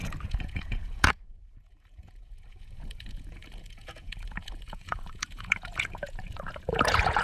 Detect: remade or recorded remade